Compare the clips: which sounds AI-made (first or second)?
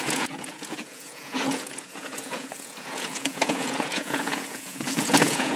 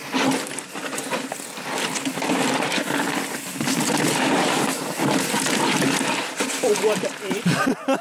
first